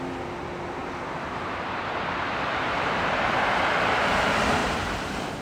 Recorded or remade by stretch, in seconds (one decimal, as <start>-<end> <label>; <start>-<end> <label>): 0.0-0.8 recorded; 0.8-4.0 remade; 4.0-4.6 recorded; 4.6-5.4 remade

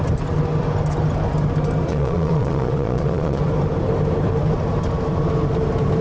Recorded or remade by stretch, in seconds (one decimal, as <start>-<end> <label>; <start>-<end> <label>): 0.0-1.9 recorded; 1.9-3.4 remade; 3.4-6.0 recorded

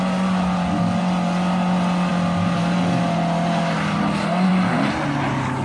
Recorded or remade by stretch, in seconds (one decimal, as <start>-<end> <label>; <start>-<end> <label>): 0.0-5.6 recorded

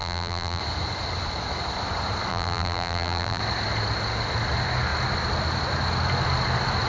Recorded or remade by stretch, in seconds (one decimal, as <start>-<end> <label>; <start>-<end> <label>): 0.0-0.6 remade; 0.6-2.3 recorded; 2.3-3.4 remade; 3.4-6.9 recorded

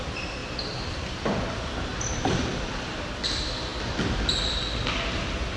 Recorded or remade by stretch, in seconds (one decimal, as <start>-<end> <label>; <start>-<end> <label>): 0.0-0.4 recorded; 0.4-1.4 remade; 1.4-1.9 recorded; 1.9-2.7 remade; 2.7-5.6 recorded

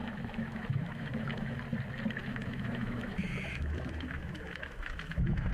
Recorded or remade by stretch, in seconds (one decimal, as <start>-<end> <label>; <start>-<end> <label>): 0.0-1.6 remade; 1.6-2.2 recorded; 2.2-5.5 remade

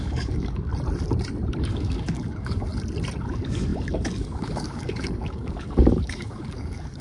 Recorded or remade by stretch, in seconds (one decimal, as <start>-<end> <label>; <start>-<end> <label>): 0.0-0.7 remade; 0.7-1.6 recorded; 1.6-2.7 remade; 2.7-3.2 recorded; 3.2-7.0 remade

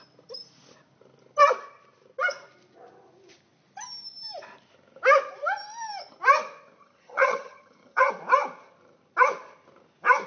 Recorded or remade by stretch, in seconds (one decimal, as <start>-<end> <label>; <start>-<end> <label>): 0.0-6.8 recorded; 6.8-8.1 remade; 8.1-10.3 recorded